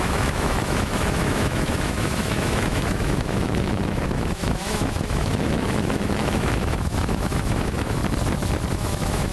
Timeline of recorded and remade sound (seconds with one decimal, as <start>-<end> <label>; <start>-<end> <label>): 0.0-8.0 remade; 8.0-8.7 recorded; 8.7-9.3 remade